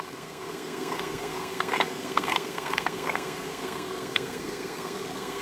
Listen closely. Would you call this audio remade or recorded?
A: remade